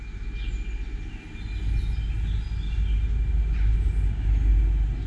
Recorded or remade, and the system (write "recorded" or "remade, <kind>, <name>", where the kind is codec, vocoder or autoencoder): recorded